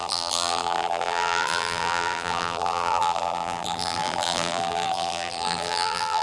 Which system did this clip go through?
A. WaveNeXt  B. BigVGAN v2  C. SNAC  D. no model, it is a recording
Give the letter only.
B